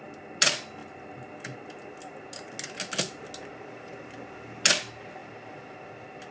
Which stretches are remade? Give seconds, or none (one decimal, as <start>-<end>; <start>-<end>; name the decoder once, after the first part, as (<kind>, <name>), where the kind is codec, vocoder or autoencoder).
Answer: none